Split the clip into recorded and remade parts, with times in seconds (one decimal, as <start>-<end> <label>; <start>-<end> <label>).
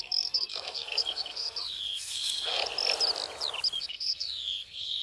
0.0-2.6 remade; 2.6-3.8 recorded; 3.8-5.0 remade